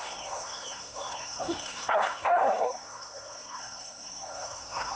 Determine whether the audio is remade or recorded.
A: remade